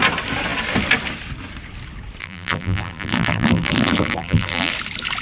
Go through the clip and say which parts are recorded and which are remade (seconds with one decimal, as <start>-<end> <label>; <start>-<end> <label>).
0.0-2.2 recorded; 2.2-4.7 remade; 4.7-5.2 recorded